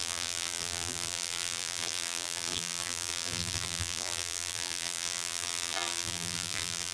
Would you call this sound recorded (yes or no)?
no